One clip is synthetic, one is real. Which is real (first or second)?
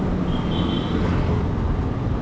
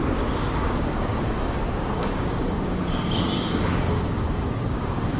first